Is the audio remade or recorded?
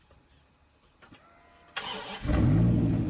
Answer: recorded